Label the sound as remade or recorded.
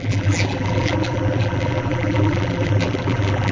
remade